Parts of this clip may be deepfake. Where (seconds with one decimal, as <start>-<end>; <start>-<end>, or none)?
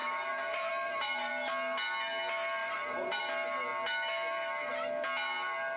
0.0-1.3; 2.6-3.2